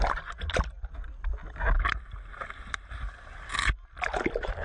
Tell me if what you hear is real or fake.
real